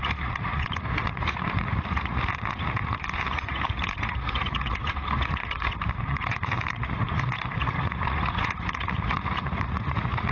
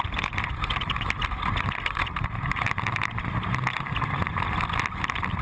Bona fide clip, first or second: second